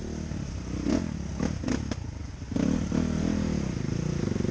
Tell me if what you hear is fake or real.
real